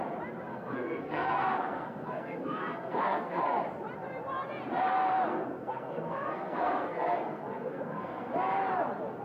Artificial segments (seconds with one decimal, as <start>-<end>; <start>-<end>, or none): 0.5-3.4; 5.3-8.3